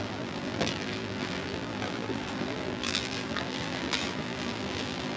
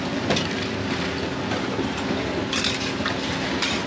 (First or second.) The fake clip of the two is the first